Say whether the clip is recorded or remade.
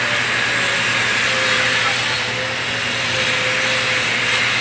recorded